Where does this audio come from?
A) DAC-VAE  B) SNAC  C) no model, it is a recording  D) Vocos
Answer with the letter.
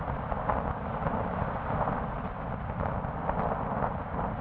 C